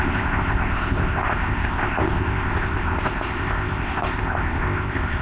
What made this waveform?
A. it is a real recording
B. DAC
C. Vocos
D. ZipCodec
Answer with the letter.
D